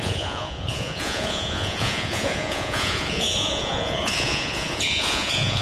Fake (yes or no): yes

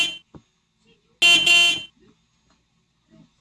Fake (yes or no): no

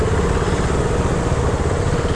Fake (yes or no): no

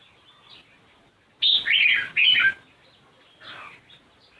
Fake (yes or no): no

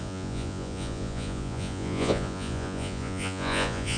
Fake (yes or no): yes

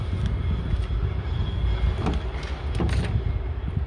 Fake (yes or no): no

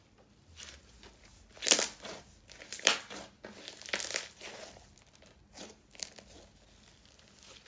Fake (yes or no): no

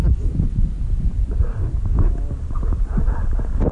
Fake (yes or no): no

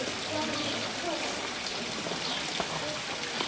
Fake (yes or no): no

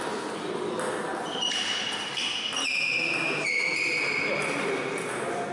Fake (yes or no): no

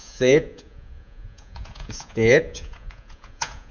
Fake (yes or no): yes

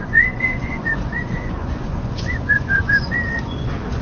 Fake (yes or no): yes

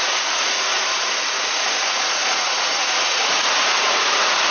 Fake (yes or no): yes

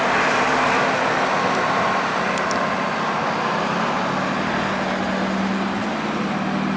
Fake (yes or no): no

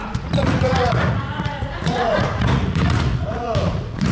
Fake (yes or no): yes